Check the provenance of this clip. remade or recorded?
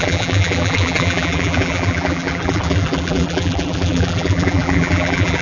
remade